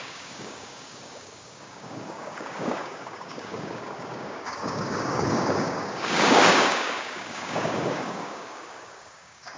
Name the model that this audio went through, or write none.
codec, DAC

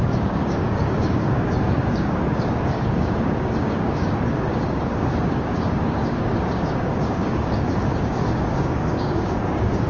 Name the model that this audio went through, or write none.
codec, DAC